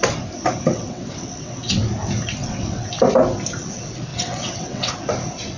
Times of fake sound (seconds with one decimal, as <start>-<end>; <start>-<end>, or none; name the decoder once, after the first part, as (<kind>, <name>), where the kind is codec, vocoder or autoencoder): 0.7-1.8 (vocoder, WaveNeXt); 2.4-2.9; 4.1-4.9